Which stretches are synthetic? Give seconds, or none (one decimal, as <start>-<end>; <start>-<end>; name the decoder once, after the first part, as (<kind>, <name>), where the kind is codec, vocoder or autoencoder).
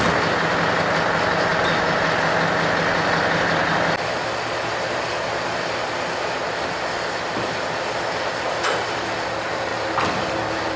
none